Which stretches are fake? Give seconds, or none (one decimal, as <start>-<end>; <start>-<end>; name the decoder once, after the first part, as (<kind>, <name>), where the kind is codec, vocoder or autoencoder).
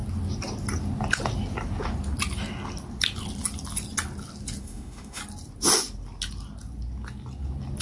4.6-5.2 (autoencoder, DAC-VAE)